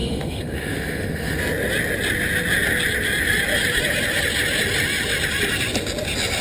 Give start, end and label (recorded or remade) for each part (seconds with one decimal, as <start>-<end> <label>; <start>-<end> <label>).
0.0-1.4 remade; 1.4-6.4 recorded